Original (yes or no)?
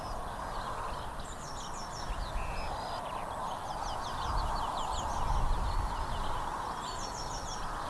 yes